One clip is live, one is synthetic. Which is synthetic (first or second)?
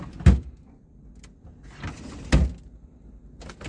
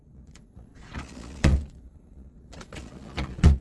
second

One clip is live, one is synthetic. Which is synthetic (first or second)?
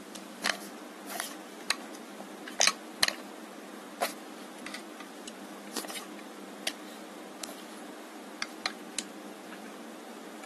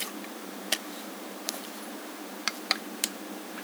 second